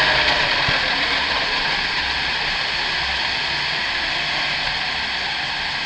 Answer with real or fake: real